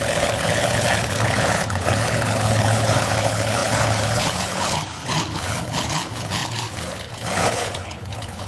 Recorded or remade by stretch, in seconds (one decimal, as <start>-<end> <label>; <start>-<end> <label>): 0.0-8.5 remade